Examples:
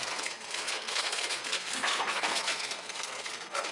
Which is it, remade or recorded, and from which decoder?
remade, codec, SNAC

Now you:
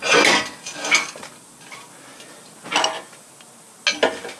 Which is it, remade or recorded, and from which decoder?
recorded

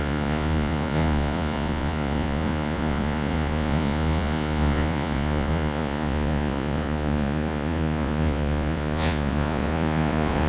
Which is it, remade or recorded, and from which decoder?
remade, vocoder, Vocos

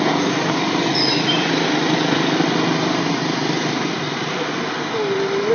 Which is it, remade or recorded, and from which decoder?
recorded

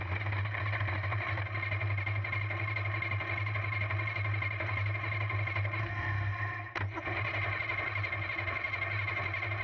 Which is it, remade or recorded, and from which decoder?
recorded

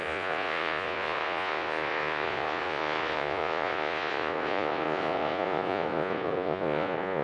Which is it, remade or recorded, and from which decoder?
remade, vocoder, Vocos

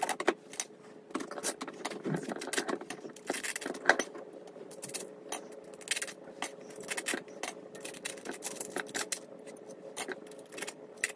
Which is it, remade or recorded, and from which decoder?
recorded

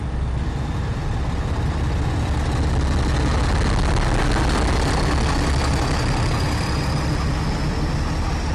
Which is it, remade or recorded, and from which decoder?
recorded